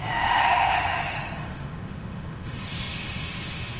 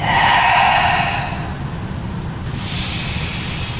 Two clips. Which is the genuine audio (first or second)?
second